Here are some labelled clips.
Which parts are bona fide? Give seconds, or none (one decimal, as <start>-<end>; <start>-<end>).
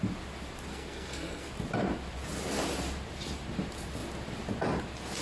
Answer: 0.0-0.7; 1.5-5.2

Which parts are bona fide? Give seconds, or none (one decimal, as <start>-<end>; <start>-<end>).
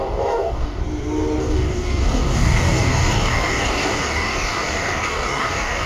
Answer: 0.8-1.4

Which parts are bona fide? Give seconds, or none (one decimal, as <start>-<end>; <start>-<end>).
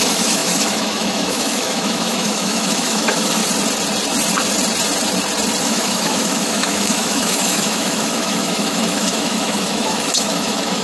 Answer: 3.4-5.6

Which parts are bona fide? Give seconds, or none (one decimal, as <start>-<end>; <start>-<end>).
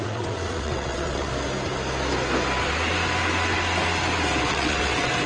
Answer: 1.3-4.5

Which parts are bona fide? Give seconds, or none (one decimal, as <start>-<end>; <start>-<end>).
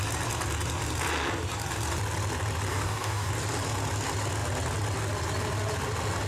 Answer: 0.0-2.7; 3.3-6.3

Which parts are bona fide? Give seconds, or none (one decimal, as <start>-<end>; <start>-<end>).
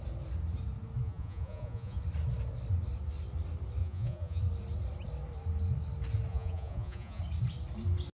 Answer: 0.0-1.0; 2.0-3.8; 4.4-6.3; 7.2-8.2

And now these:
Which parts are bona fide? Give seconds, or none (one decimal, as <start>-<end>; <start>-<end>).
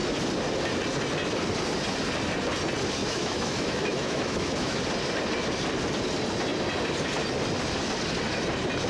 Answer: 0.0-3.0; 4.8-8.9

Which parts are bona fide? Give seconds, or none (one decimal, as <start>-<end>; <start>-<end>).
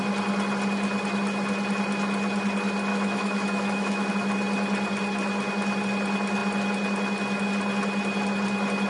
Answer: 0.0-2.9; 4.1-8.9